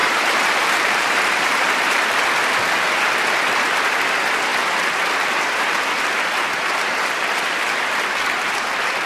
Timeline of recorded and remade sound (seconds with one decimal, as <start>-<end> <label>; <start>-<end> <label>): 0.0-2.2 remade; 2.2-9.1 recorded